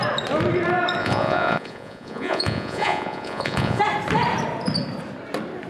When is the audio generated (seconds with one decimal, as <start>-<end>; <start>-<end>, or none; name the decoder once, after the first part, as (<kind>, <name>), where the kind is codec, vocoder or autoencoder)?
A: 1.0-3.8 (vocoder, Vocos)